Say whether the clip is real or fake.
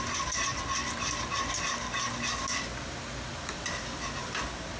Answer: real